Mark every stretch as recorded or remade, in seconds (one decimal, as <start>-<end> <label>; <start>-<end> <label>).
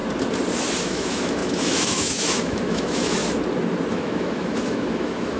0.0-0.8 recorded; 0.8-3.2 remade; 3.2-3.9 recorded; 3.9-5.4 remade